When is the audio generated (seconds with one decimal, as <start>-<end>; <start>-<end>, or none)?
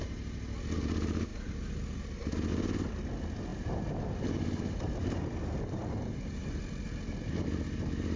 1.3-2.5; 3.5-6.7